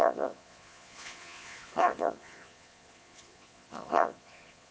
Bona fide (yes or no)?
no